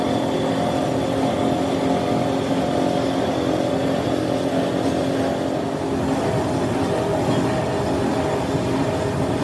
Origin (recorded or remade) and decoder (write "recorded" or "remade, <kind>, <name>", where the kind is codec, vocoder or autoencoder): recorded